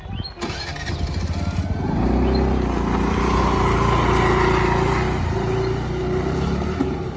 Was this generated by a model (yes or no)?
no